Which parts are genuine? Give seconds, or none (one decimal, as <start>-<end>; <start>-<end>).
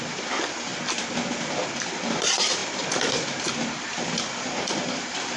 0.7-1.7